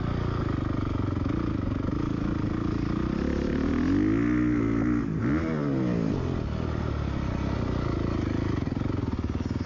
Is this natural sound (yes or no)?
yes